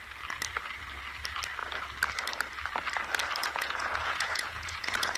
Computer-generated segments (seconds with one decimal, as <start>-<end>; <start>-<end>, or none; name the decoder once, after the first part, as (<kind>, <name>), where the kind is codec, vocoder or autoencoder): 3.4-5.2 (vocoder, Vocos)